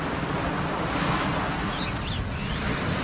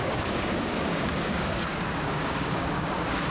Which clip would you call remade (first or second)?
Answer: second